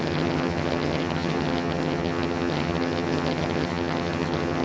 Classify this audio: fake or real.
fake